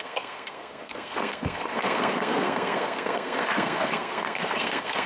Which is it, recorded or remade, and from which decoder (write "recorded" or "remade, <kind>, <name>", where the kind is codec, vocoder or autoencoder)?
remade, codec, SNAC